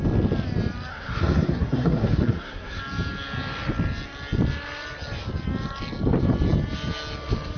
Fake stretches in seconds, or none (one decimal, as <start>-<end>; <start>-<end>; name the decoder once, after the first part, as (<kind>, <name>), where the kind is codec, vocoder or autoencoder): 0.9-2.8 (codec, SNAC)